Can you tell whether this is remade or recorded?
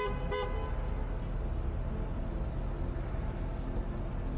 recorded